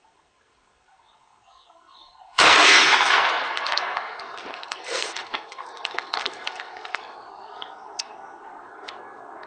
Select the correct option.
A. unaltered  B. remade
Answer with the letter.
B